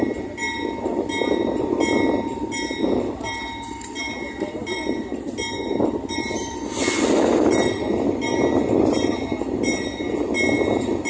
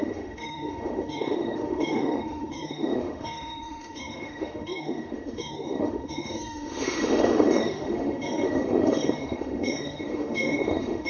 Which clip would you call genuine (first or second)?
first